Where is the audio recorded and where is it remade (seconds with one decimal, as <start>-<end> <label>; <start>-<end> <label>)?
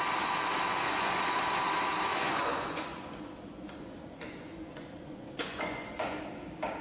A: 0.0-0.7 recorded; 0.7-1.2 remade; 1.2-2.1 recorded; 2.1-6.2 remade; 6.2-6.8 recorded